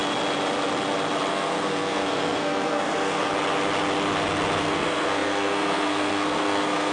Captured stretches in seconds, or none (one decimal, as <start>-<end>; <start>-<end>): 0.0-1.3; 3.3-4.6